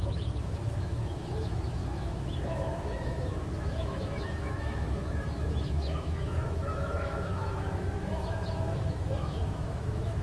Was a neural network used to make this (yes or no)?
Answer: yes